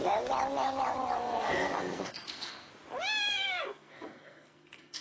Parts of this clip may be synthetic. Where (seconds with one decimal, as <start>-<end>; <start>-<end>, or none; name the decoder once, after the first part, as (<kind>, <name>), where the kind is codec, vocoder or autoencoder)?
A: 1.2-2.7 (codec, SNAC); 3.3-5.0